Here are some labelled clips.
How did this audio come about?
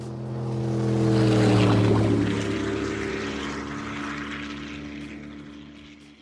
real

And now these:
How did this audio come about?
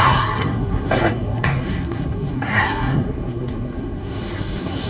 fake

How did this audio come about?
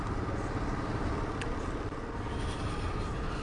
real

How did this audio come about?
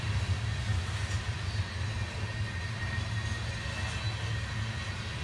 real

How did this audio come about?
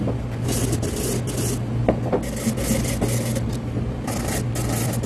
real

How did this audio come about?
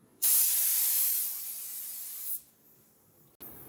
real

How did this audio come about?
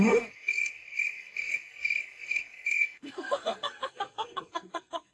fake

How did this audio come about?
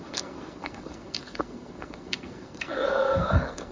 fake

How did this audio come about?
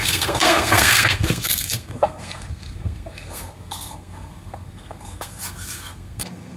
fake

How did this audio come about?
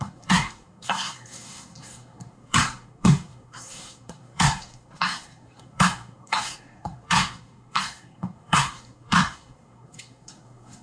fake